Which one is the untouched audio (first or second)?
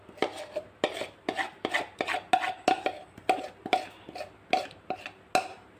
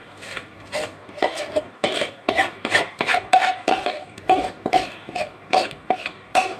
first